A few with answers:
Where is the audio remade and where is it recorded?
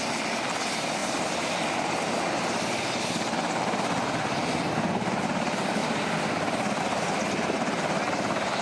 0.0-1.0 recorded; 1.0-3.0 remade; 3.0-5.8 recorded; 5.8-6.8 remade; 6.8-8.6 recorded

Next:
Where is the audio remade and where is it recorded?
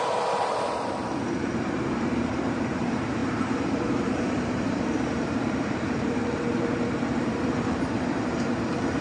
0.0-9.0 remade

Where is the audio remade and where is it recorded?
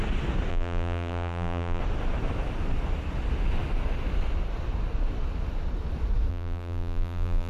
0.0-0.5 recorded; 0.5-1.8 remade; 1.8-6.3 recorded; 6.3-7.5 remade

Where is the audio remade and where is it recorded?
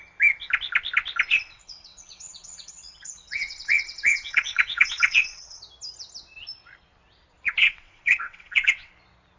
0.0-1.3 recorded; 1.3-5.6 remade; 5.6-7.6 recorded; 7.6-8.9 remade; 8.9-9.4 recorded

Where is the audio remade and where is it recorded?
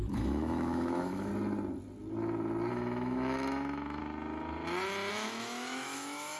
0.0-1.3 remade; 1.3-2.7 recorded; 2.7-4.0 remade; 4.0-5.1 recorded; 5.1-6.4 remade